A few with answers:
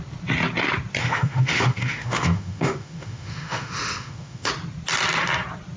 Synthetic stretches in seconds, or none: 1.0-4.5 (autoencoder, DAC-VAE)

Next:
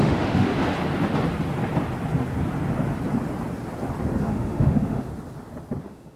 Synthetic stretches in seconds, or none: 0.0-0.5 (autoencoder, DAC-VAE); 4.2-5.1; 5.8-6.2